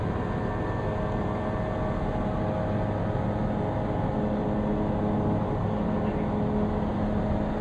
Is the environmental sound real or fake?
real